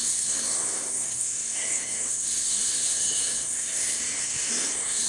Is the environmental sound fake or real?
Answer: fake